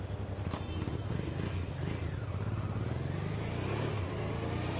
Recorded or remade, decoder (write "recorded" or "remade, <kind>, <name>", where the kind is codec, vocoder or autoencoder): recorded